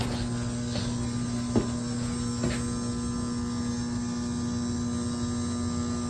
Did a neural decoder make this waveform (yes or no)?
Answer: no